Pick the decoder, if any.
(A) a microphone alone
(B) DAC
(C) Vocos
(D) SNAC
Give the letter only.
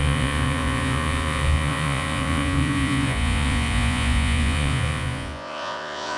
C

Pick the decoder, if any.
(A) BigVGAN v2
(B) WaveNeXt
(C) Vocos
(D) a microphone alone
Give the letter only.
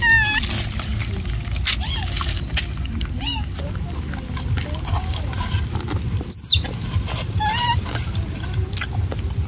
D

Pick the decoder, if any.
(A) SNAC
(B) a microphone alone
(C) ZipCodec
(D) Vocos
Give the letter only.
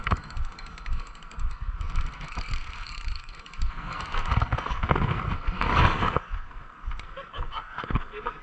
A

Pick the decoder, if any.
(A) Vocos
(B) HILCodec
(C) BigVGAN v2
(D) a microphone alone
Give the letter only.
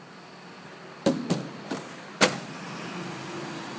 D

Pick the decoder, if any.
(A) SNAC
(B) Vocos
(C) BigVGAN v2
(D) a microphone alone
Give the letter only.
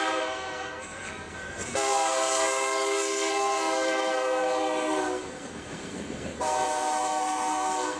A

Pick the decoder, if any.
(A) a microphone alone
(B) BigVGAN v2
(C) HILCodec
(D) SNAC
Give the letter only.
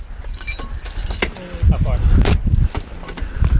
A